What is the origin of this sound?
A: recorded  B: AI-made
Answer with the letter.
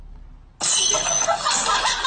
A